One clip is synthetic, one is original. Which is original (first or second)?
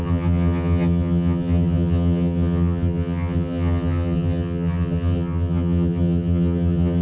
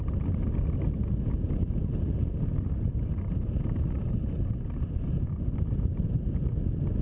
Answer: second